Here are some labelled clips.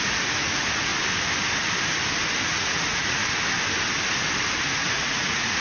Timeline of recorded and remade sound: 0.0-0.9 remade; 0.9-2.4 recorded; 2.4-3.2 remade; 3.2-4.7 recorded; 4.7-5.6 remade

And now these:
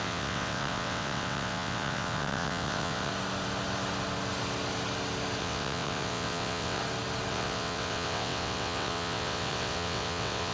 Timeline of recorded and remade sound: 0.0-3.1 remade; 3.1-5.4 recorded; 5.4-6.8 remade; 6.8-7.3 recorded; 7.3-10.5 remade